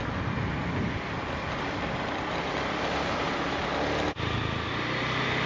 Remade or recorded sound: recorded